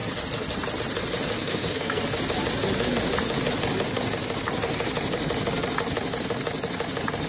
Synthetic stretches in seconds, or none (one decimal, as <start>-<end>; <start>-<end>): 1.4-2.0